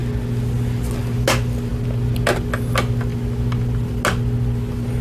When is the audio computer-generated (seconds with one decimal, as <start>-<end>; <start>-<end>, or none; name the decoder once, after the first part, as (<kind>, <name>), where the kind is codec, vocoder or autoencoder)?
none